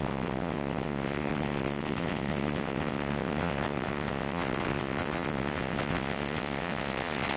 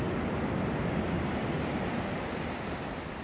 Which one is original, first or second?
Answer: second